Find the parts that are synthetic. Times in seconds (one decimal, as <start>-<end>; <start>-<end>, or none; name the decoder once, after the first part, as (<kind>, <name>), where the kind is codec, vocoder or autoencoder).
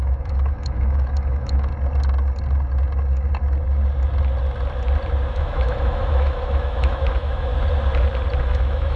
0.0-1.7 (autoencoder, DAC-VAE); 5.3-7.5; 8.4-9.0